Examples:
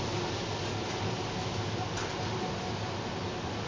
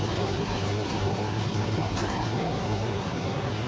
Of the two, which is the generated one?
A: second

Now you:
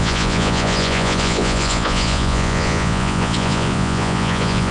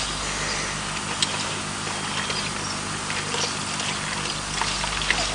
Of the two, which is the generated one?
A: first